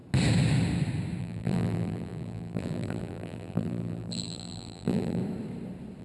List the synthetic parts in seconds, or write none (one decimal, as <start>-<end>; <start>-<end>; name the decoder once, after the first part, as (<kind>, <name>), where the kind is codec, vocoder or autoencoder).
1.2-5.2 (vocoder, BigVGAN v2)